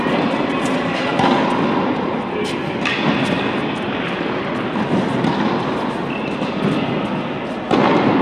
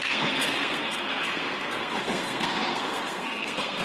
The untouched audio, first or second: first